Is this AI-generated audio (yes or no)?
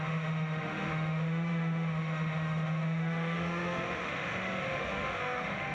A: yes